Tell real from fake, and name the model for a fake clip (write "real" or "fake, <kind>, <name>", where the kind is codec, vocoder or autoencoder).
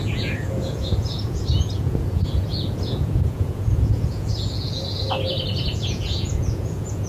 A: fake, vocoder, Vocos